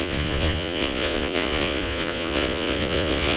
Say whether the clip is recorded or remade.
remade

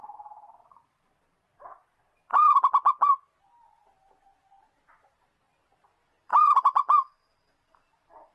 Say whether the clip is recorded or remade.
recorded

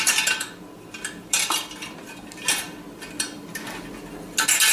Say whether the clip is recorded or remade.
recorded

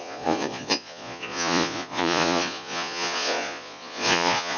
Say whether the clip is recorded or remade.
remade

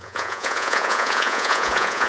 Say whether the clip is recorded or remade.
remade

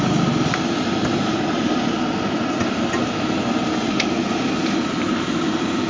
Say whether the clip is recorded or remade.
recorded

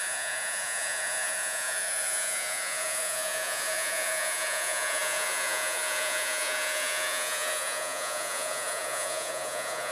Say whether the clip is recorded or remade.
remade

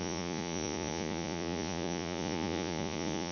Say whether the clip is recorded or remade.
remade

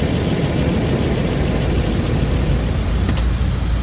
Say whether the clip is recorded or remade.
recorded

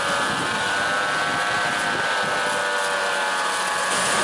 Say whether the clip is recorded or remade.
recorded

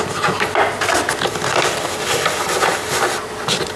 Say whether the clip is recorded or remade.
recorded